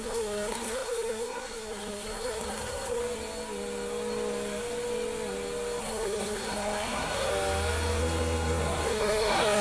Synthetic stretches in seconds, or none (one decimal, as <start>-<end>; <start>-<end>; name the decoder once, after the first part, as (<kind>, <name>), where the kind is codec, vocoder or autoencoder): 0.0-3.0 (codec, SNAC); 5.8-7.3; 8.0-9.6